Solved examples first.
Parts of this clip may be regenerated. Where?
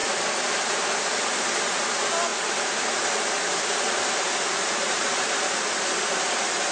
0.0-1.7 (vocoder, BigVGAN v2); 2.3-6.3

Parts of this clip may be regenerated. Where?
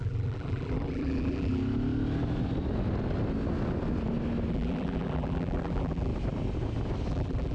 0.0-1.6 (vocoder, BigVGAN v2); 4.5-6.1; 7.1-7.5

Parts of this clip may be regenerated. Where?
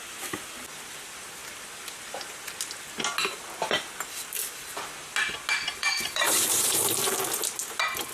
5.7-7.2 (vocoder, BigVGAN v2)